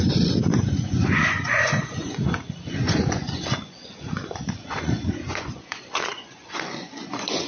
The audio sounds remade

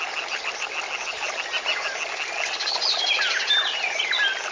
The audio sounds recorded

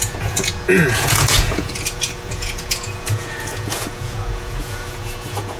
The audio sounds remade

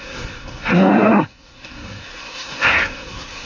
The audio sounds remade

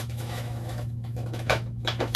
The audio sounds remade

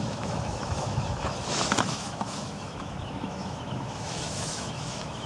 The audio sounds remade